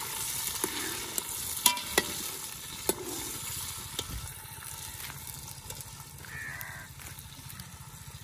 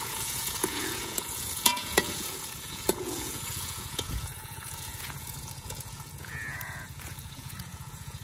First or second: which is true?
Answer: first